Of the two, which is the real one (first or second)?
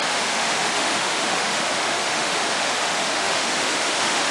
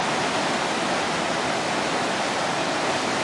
second